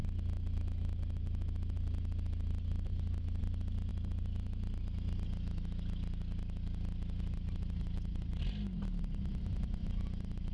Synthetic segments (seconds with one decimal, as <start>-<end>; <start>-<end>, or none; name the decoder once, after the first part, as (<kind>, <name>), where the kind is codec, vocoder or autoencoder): none